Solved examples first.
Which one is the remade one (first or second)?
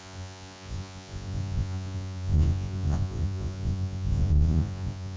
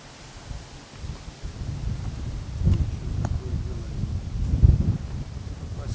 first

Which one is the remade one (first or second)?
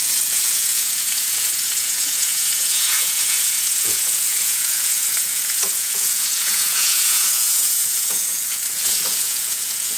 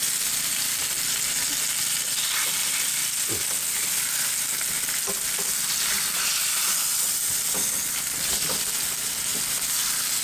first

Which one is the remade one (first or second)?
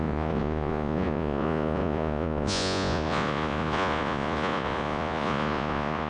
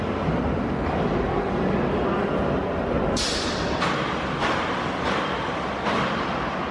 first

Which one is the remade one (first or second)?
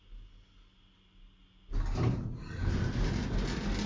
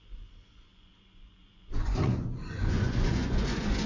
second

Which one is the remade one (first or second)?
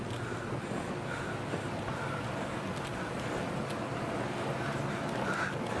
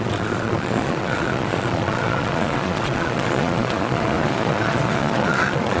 second